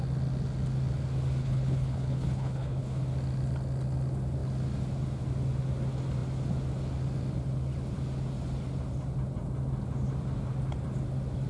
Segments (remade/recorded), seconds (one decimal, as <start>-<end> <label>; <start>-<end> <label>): 0.0-1.4 recorded; 1.4-3.0 remade; 3.0-11.5 recorded